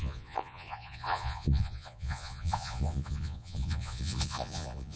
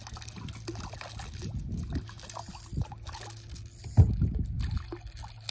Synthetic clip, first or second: first